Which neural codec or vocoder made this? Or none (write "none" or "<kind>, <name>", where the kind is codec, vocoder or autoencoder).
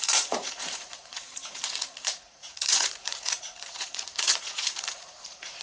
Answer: vocoder, Vocos